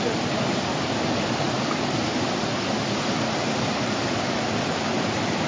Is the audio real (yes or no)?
yes